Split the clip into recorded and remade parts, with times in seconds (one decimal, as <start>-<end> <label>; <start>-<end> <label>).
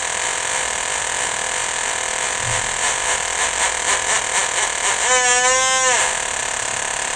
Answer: 0.0-1.6 recorded; 1.6-4.2 remade; 4.2-6.4 recorded; 6.4-7.2 remade